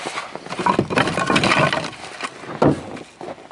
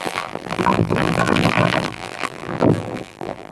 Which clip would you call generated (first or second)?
second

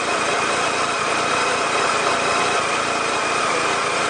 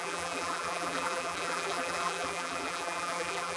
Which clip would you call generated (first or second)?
second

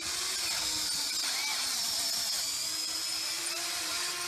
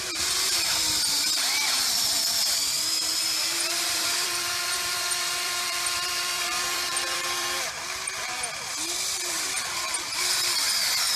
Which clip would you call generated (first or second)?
second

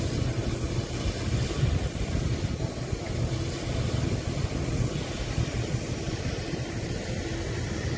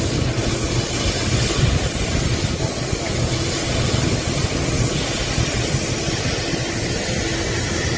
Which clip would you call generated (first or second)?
first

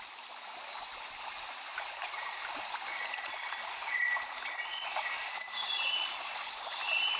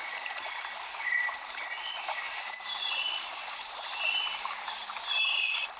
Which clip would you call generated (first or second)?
second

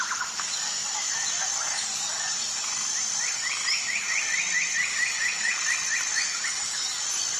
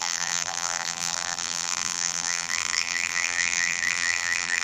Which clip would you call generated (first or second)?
second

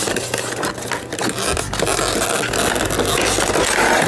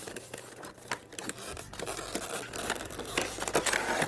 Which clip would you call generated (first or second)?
second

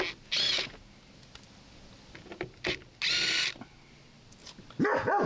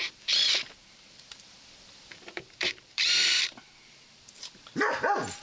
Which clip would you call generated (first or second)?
second